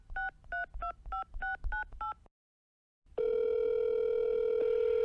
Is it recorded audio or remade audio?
recorded